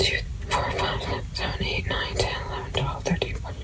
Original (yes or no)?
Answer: yes